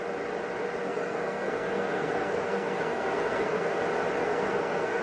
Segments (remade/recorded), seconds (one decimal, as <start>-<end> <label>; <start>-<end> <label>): 0.0-0.8 recorded; 0.8-3.8 remade; 3.8-4.2 recorded; 4.2-5.0 remade

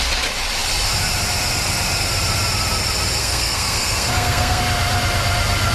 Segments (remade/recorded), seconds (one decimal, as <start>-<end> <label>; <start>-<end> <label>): 0.0-3.2 recorded; 3.2-4.6 remade; 4.6-5.7 recorded

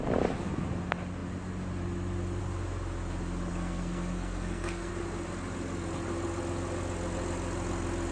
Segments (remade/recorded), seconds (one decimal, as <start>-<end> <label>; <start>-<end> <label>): 0.0-3.5 recorded; 3.5-4.9 remade; 4.9-8.1 recorded

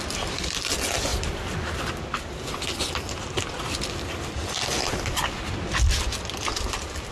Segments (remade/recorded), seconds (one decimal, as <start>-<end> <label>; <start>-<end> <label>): 0.0-7.1 recorded

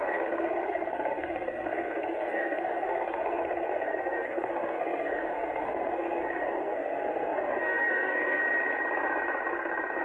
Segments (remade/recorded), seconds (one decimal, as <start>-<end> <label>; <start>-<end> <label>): 0.0-8.4 remade; 8.4-10.0 recorded

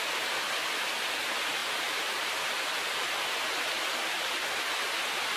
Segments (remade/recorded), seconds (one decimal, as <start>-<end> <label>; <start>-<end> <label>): 0.0-5.4 recorded

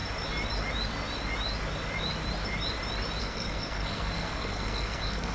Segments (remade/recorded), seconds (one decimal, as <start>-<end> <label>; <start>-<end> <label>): 0.0-3.2 recorded; 3.2-5.3 remade